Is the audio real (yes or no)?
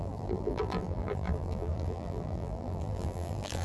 no